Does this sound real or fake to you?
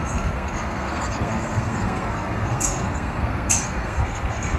fake